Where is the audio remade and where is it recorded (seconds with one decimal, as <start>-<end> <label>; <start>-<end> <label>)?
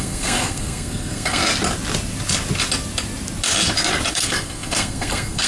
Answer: 0.0-1.4 remade; 1.4-4.1 recorded; 4.1-5.5 remade